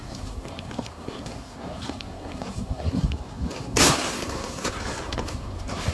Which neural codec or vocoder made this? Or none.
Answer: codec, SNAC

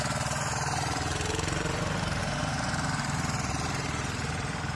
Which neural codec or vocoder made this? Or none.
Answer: vocoder, BigVGAN v2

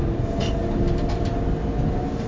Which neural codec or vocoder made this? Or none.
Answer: none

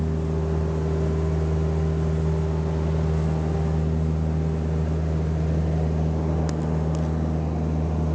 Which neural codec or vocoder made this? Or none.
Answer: none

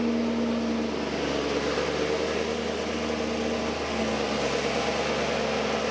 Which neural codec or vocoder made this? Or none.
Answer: none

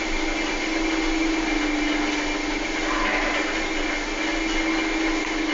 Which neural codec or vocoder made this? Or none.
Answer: none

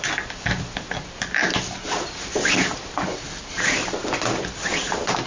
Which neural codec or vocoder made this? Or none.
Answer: none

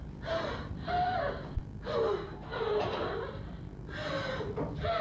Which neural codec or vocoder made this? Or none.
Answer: vocoder, BigVGAN v2